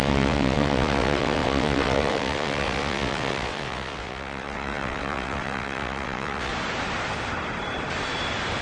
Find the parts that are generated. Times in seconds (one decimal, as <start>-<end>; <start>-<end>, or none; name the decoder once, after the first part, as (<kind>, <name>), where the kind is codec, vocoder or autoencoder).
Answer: 0.0-6.5 (vocoder, WaveNeXt)